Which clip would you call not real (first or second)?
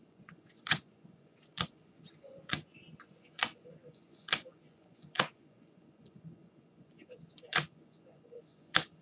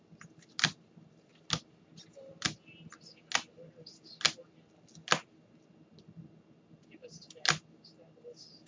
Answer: first